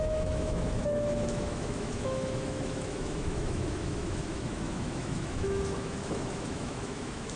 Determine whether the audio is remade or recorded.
remade